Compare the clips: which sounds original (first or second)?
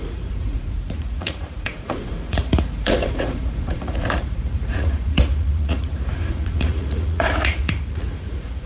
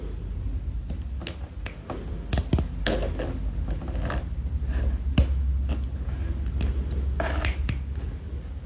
second